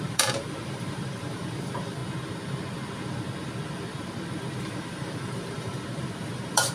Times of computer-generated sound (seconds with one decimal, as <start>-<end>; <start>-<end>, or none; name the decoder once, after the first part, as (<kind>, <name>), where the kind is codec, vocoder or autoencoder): 0.0-2.0 (vocoder, BigVGAN v2); 4.6-6.7